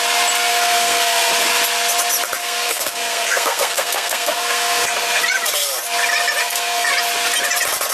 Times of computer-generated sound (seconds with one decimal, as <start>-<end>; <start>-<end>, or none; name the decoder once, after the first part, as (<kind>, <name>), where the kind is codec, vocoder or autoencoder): 0.5-1.3 (codec, SNAC); 2.4-5.2; 6.4-6.9